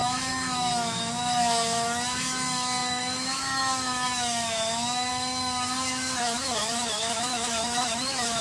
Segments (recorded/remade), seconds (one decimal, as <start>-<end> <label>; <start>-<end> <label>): 0.0-8.4 remade